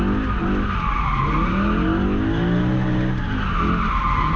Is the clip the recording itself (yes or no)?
yes